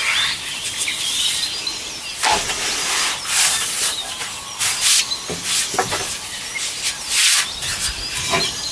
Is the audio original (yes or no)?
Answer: yes